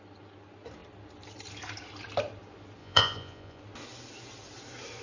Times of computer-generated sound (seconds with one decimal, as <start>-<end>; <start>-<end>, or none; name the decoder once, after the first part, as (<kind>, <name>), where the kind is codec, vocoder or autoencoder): 2.8-3.6 (vocoder, Vocos)

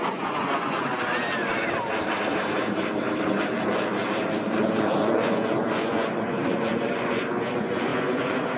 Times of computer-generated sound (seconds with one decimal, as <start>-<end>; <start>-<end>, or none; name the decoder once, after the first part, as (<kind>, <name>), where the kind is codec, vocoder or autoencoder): 0.0-0.9 (vocoder, Vocos); 4.3-8.6